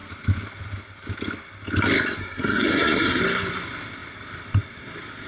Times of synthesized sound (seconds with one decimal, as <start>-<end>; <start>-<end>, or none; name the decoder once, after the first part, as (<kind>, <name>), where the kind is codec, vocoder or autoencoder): 2.2-3.2 (codec, SNAC)